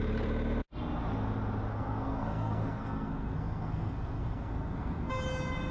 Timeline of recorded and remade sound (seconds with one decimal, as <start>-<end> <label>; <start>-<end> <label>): 0.0-1.7 recorded; 1.7-5.1 remade; 5.1-5.7 recorded